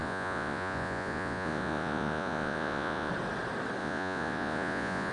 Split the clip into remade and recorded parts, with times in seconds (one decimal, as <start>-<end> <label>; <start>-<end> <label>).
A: 0.0-3.1 remade; 3.1-3.8 recorded; 3.8-5.1 remade